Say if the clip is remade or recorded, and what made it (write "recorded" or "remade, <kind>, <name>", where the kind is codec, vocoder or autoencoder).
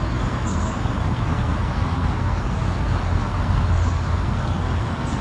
remade, codec, SNAC